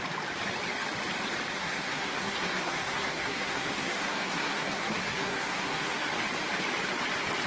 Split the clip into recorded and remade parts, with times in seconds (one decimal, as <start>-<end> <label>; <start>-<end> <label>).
0.0-1.6 recorded; 1.6-6.1 remade; 6.1-7.5 recorded